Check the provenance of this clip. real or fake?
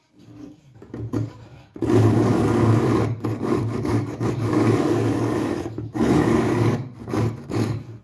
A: fake